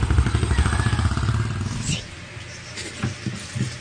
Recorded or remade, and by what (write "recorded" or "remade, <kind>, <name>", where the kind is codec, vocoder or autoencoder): recorded